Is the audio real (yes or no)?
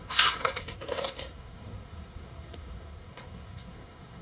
no